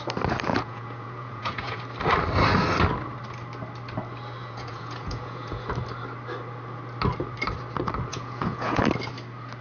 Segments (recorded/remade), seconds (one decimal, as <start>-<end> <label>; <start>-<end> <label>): 0.0-0.5 recorded; 0.5-1.8 remade; 1.8-4.4 recorded; 4.4-5.7 remade; 5.7-8.1 recorded; 8.1-8.8 remade; 8.8-9.6 recorded